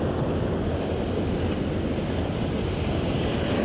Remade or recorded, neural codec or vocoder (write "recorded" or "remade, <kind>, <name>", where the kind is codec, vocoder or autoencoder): recorded